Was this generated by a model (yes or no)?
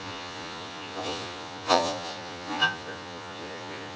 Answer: yes